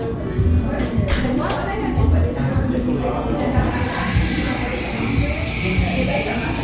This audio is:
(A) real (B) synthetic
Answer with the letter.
A